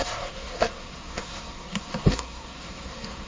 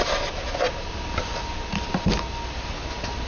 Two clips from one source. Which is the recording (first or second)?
second